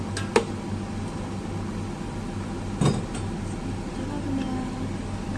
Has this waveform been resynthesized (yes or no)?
no